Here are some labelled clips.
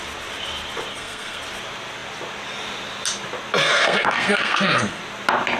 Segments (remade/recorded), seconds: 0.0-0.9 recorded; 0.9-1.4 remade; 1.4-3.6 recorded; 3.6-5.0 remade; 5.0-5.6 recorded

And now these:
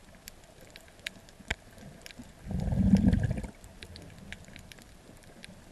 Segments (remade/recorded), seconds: 0.0-5.7 recorded

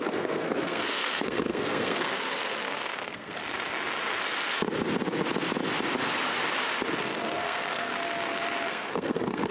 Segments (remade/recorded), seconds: 0.0-3.4 remade; 3.4-7.0 recorded; 7.0-7.9 remade; 7.9-8.7 recorded; 8.7-9.5 remade

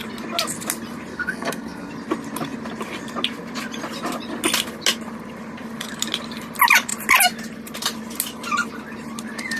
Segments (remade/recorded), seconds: 0.0-1.1 recorded; 1.1-1.9 remade; 1.9-9.6 recorded

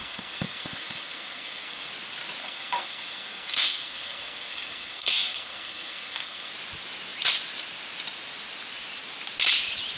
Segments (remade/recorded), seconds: 0.0-1.9 remade; 1.9-2.4 recorded; 2.4-6.5 remade; 6.5-10.0 recorded

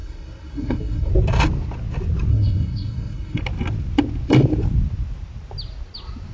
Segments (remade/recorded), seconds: 0.0-1.1 remade; 1.1-2.3 recorded; 2.3-3.4 remade; 3.4-6.3 recorded

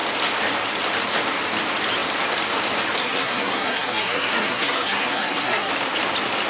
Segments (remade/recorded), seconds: 0.0-3.0 recorded; 3.0-5.7 remade; 5.7-6.5 recorded

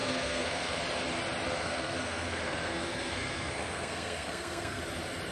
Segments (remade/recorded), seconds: 0.0-0.8 remade; 0.8-1.6 recorded; 1.6-4.8 remade; 4.8-5.3 recorded